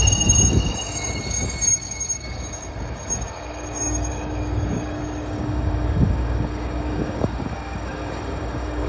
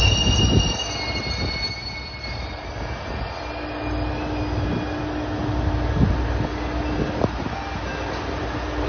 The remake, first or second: first